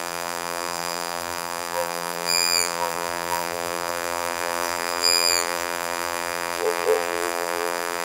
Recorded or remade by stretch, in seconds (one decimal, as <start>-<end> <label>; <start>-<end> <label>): 0.0-8.0 remade